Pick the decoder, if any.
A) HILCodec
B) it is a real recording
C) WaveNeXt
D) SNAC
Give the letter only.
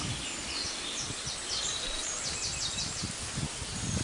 B